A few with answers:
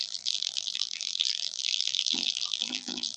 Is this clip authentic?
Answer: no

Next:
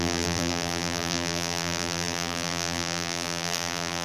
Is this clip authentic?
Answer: no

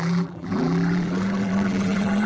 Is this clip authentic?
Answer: no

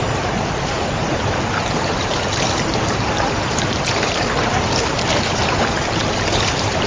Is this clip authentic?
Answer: no